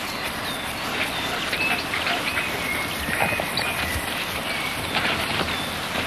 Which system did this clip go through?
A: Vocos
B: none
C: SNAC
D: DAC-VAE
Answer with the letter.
B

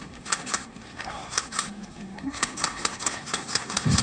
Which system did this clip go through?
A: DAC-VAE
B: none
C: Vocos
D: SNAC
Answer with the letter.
D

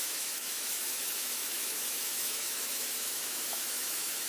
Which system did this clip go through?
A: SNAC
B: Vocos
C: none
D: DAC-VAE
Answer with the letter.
D